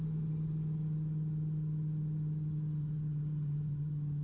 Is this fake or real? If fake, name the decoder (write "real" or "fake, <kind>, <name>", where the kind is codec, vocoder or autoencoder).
real